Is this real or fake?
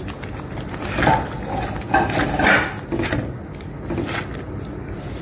real